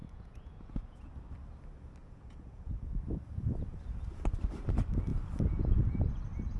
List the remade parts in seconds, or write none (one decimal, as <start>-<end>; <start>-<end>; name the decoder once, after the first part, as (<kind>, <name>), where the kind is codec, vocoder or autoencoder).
0.0-1.1 (vocoder, Vocos); 2.0-3.0